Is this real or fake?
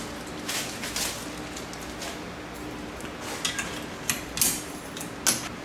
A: real